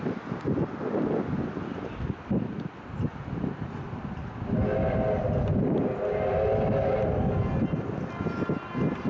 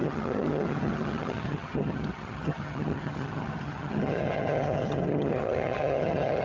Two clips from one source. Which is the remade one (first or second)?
second